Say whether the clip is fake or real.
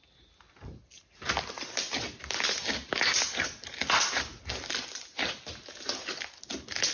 real